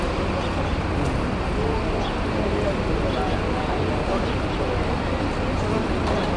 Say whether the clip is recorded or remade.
recorded